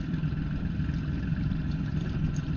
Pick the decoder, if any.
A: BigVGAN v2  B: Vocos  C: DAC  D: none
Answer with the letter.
D